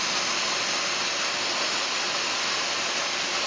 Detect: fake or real real